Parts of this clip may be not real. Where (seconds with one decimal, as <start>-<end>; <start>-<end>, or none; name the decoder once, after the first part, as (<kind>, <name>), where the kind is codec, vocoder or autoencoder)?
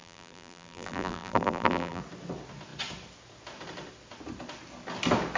0.0-2.0 (vocoder, BigVGAN v2)